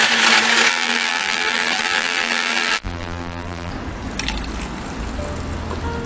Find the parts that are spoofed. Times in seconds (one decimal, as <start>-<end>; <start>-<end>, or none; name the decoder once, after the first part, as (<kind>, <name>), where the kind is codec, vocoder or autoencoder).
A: 0.7-3.7 (vocoder, BigVGAN v2)